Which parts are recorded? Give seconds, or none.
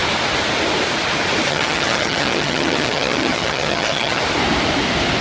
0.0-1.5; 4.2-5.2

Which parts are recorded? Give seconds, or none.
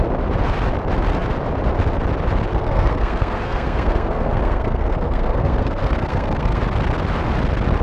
0.0-2.5; 6.6-7.8